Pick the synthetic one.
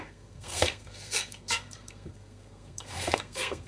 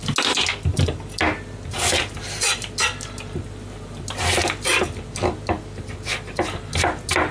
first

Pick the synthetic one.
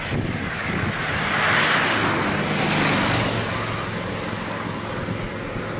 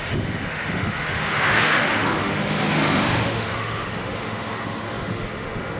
second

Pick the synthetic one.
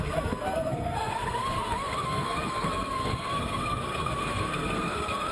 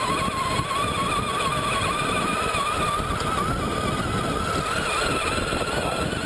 first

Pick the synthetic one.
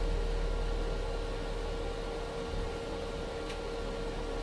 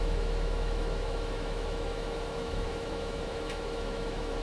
second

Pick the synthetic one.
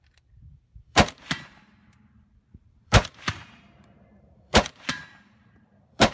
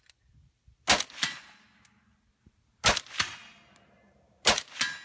first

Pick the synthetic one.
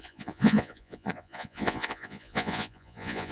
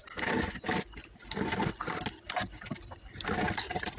first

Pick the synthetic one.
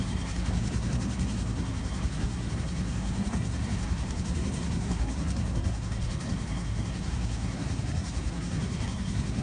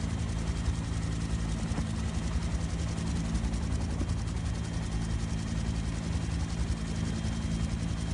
first